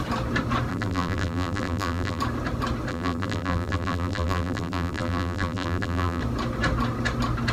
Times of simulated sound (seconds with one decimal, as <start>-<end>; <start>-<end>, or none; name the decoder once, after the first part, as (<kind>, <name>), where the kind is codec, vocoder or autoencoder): 0.7-2.2 (vocoder, BigVGAN v2); 2.9-6.2